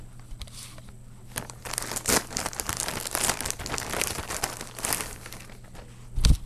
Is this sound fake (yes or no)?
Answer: no